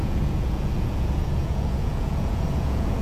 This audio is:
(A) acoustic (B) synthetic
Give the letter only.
B